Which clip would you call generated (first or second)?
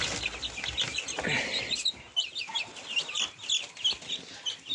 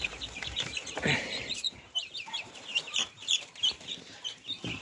second